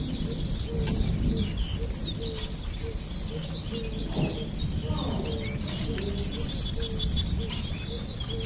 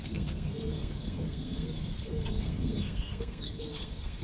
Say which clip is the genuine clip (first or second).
first